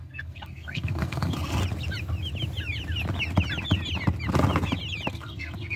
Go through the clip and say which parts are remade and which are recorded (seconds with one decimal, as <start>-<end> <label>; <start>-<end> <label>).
0.0-1.6 remade; 1.6-5.1 recorded; 5.1-5.8 remade